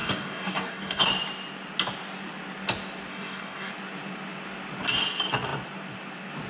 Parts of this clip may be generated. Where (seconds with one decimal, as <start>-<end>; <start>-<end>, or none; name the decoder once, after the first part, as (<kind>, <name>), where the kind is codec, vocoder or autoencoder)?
0.0-1.1 (codec, DAC); 3.1-3.7